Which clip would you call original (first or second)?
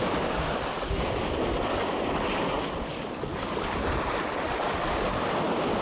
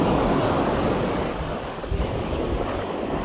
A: first